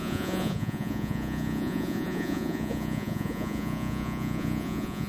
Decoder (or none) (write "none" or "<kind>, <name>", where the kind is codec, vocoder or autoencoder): vocoder, Vocos